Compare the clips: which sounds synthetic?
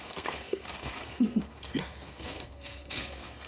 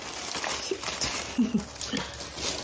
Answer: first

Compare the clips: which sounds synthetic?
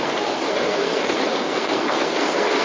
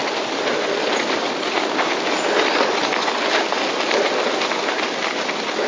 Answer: first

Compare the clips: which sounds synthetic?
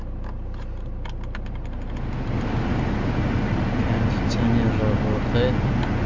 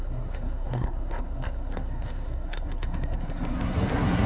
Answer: second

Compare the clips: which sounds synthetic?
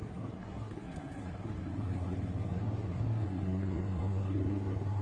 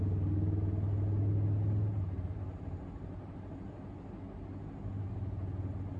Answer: first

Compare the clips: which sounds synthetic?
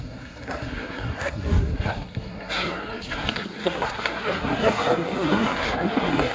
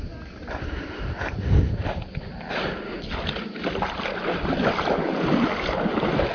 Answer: first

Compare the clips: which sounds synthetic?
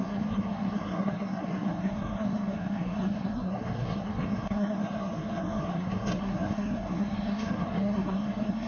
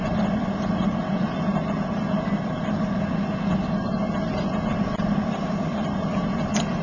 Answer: first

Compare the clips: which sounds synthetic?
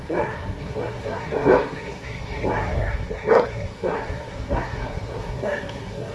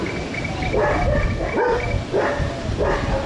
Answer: first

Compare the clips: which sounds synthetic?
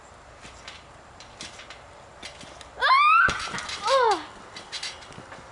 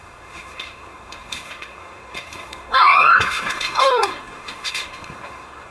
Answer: second